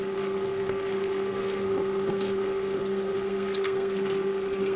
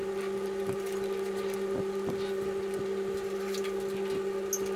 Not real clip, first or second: first